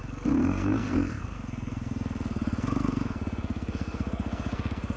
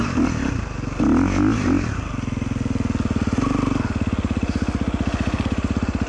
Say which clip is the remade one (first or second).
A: first